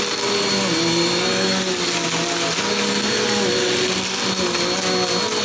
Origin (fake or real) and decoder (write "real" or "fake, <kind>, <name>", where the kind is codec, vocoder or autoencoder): real